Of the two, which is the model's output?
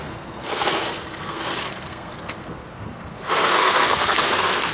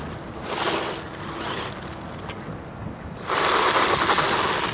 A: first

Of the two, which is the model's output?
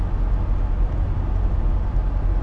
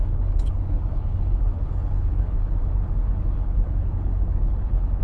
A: second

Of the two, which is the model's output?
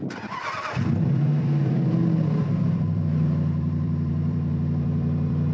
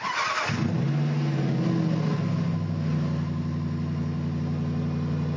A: first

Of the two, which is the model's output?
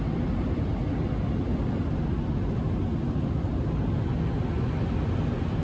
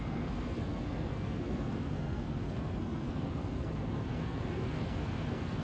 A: second